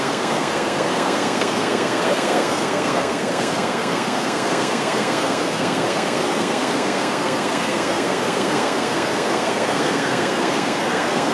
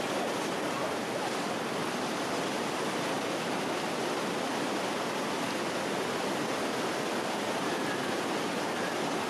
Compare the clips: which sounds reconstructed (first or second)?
first